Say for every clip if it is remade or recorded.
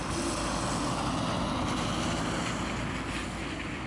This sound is recorded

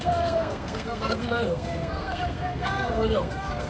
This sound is remade